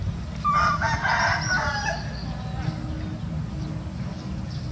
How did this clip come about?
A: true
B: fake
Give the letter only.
A